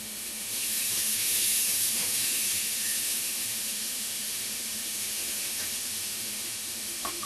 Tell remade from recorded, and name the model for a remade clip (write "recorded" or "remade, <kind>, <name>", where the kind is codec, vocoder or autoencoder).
remade, autoencoder, DAC-VAE